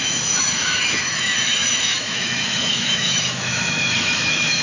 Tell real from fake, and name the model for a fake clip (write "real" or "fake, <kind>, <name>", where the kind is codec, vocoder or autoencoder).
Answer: fake, autoencoder, DAC-VAE